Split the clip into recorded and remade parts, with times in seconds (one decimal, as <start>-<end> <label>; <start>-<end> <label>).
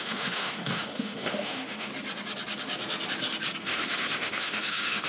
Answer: 0.0-1.9 remade; 1.9-3.6 recorded; 3.6-5.1 remade